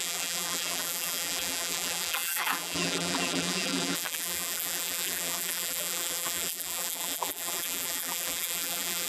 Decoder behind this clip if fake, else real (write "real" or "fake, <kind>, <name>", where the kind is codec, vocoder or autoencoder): fake, vocoder, BigVGAN v2